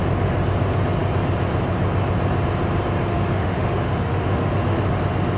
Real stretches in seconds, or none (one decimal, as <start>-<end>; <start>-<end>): 0.0-3.1; 5.0-5.4